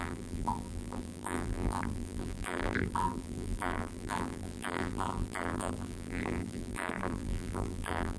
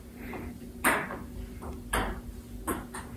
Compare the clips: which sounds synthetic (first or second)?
first